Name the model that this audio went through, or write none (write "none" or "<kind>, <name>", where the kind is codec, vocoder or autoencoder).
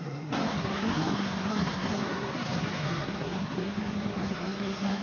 codec, SNAC